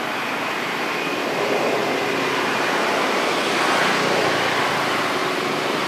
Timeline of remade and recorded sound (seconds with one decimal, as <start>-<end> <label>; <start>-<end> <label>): 0.0-5.9 recorded